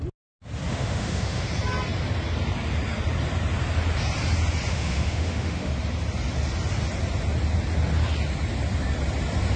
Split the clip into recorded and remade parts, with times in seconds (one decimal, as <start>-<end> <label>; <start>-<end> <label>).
0.0-0.7 recorded; 0.7-1.5 remade; 1.5-4.7 recorded; 4.7-5.7 remade; 5.7-9.6 recorded